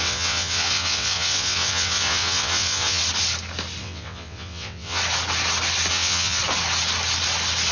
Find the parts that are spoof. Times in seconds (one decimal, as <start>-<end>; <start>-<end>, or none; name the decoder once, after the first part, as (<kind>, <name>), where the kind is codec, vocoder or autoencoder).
0.0-3.0 (vocoder, WaveNeXt); 3.8-5.0; 5.9-6.4